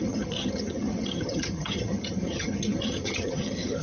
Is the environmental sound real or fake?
fake